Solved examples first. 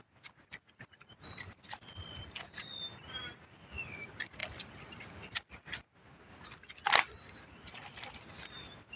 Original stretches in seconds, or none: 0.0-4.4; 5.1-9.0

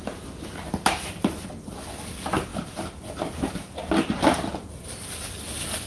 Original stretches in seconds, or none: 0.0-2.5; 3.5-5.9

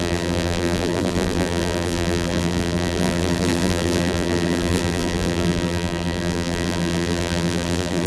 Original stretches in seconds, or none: none

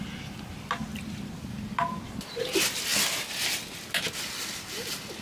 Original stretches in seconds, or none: 2.9-4.4

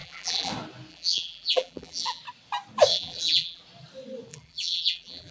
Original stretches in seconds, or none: 0.5-0.9; 2.2-2.9; 3.6-4.3

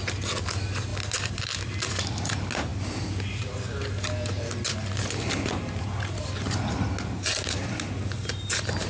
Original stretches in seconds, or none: 0.0-0.9; 2.0-8.9